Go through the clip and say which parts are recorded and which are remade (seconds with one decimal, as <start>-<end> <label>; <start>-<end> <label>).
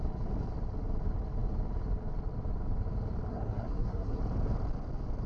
0.0-3.3 recorded; 3.3-4.2 remade; 4.2-5.3 recorded